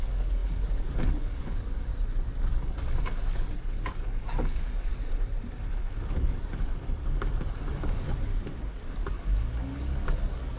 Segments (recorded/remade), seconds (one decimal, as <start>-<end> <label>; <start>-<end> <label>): 0.0-1.9 remade; 1.9-2.5 recorded; 2.5-4.9 remade; 4.9-5.7 recorded; 5.7-8.3 remade; 8.3-8.9 recorded; 8.9-10.6 remade